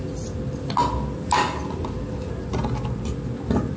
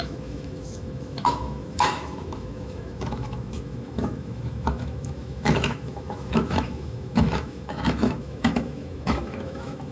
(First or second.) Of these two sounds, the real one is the first